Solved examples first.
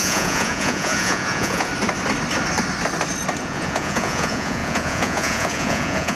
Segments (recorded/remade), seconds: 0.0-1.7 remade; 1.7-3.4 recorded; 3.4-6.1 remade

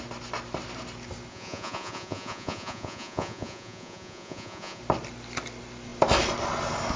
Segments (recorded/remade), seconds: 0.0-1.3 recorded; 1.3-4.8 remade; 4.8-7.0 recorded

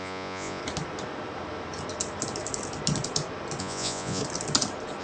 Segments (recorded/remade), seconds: 0.0-0.6 remade; 0.6-3.6 recorded; 3.6-4.2 remade; 4.2-5.0 recorded